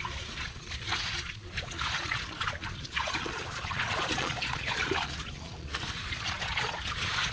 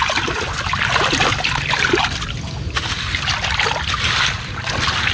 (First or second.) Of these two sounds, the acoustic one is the second